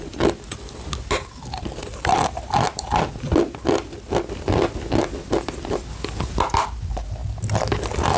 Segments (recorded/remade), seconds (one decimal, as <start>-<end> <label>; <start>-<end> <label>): 0.0-8.2 recorded